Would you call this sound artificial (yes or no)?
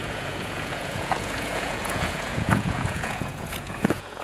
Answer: yes